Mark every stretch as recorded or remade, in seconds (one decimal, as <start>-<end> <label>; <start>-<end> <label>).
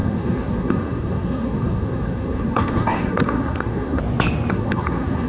0.0-4.0 remade; 4.0-4.5 recorded; 4.5-5.3 remade